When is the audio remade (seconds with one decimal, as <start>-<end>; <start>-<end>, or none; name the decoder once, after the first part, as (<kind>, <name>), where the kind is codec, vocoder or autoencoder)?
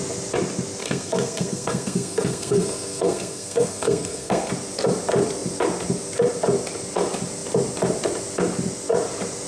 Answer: 0.8-4.5 (codec, SNAC)